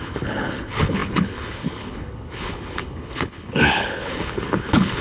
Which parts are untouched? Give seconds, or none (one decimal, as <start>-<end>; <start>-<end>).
none